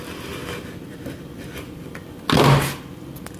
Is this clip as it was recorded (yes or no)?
yes